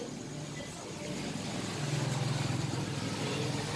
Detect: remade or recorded recorded